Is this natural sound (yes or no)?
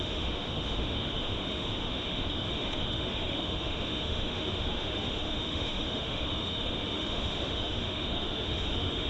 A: no